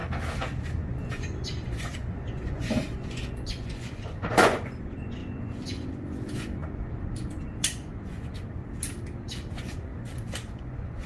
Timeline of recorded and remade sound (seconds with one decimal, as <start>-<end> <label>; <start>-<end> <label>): 0.0-0.8 recorded; 0.8-8.6 remade; 8.6-9.5 recorded; 9.5-9.9 remade; 9.9-10.5 recorded; 10.5-11.1 remade